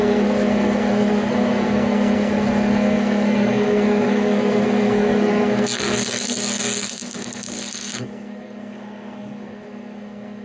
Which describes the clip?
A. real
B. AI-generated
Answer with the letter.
B